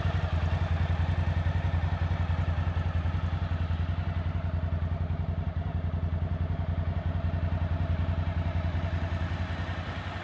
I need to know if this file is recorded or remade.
recorded